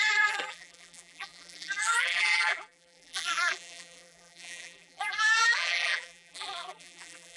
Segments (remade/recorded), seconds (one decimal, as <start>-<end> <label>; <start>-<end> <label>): 0.0-7.4 remade